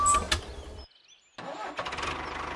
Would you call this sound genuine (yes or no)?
yes